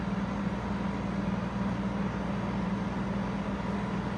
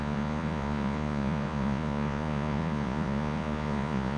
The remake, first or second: second